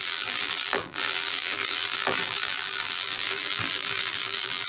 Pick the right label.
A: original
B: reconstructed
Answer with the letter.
B